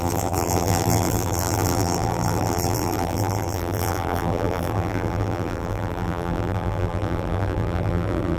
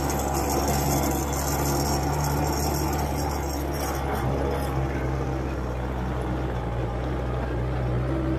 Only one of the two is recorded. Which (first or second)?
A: second